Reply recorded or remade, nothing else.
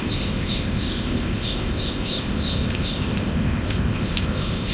remade